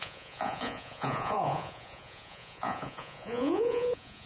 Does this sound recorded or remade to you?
remade